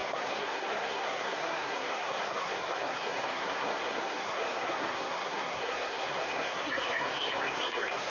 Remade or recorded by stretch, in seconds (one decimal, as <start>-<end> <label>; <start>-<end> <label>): 0.0-8.1 remade